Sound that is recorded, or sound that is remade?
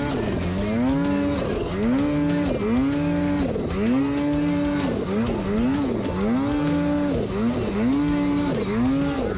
recorded